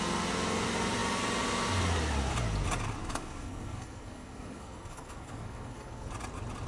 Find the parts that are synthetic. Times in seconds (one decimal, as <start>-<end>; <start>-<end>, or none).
3.0-6.1